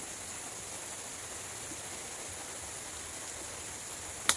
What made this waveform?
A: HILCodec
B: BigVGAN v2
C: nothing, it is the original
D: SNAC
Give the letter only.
C